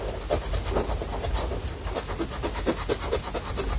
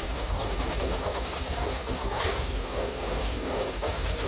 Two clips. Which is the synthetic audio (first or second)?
second